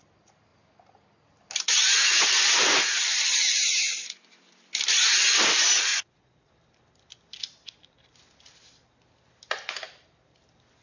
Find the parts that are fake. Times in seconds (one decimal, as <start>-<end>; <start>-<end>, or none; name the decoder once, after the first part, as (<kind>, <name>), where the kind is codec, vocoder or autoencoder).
5.9-6.5 (vocoder, Vocos)